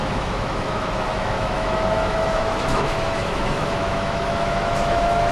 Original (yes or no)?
no